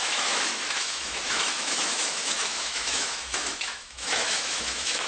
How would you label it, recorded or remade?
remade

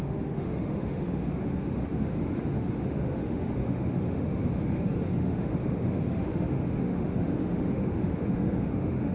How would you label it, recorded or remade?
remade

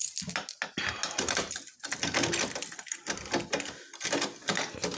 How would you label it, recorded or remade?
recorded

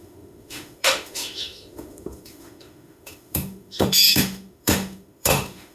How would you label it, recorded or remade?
remade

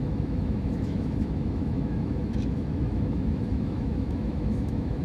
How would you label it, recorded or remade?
remade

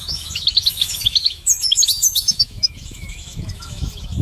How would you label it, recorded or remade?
remade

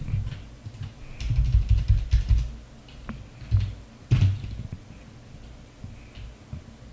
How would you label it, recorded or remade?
recorded